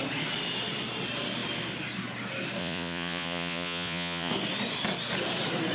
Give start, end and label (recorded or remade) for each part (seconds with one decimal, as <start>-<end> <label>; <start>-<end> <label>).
0.0-2.6 recorded; 2.6-4.3 remade; 4.3-5.7 recorded